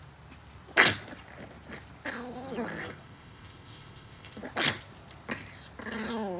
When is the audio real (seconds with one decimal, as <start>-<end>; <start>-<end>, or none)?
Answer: 0.0-2.8; 4.4-6.4